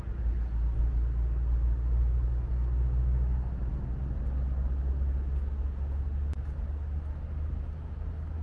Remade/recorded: recorded